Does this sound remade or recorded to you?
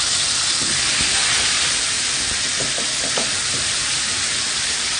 recorded